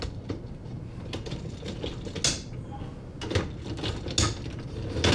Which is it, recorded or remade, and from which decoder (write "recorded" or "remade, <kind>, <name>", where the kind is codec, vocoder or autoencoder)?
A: recorded